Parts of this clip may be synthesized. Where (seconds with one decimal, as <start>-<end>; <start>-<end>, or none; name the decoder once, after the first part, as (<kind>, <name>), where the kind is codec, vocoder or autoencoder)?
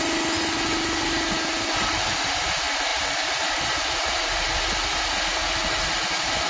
none